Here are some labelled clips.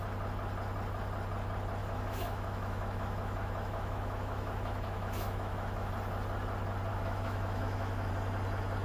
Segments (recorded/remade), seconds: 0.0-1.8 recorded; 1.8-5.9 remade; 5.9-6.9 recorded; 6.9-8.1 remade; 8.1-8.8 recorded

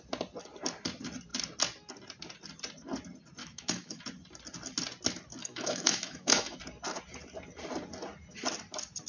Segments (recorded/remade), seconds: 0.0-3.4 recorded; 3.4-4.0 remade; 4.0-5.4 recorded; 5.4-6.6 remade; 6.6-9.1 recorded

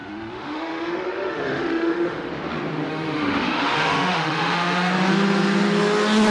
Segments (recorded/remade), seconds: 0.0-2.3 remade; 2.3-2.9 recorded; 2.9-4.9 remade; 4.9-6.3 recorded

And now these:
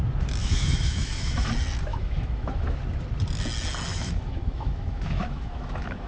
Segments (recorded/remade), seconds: 0.0-0.4 recorded; 0.4-1.5 remade; 1.5-1.9 recorded; 1.9-2.8 remade; 2.8-3.9 recorded; 3.9-6.1 remade